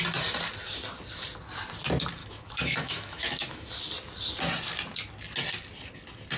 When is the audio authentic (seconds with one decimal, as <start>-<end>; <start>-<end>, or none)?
0.0-2.2; 3.7-6.4